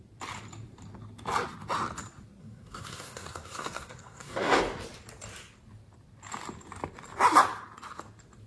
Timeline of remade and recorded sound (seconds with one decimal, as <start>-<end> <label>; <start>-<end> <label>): 0.0-2.4 recorded; 2.4-4.6 remade; 4.6-8.5 recorded